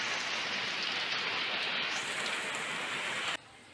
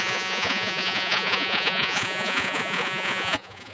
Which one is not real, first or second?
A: second